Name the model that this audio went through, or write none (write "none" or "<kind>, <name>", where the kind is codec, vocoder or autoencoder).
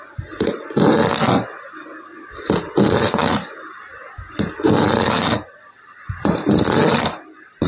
none